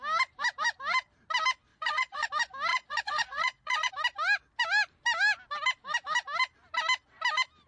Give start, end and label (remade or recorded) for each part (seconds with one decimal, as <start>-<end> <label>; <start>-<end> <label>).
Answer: 0.0-1.7 recorded; 1.7-2.3 remade; 2.3-2.7 recorded; 2.7-3.9 remade; 3.9-7.7 recorded